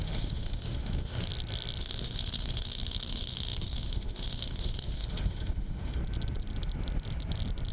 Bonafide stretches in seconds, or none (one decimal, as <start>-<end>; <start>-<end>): 1.3-1.8; 6.0-7.7